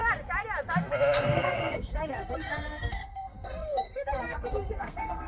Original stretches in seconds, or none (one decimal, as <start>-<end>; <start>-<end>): 0.0-1.2